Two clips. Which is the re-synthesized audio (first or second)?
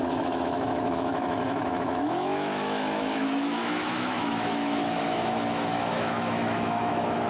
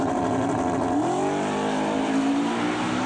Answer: first